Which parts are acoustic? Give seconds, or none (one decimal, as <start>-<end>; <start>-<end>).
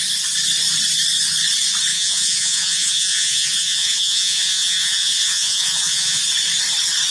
0.0-1.9; 6.2-7.1